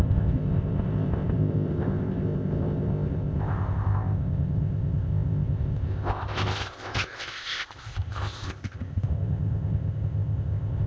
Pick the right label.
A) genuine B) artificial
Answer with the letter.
B